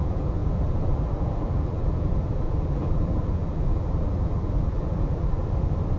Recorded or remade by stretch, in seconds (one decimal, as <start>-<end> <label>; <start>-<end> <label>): 0.0-5.4 remade; 5.4-6.0 recorded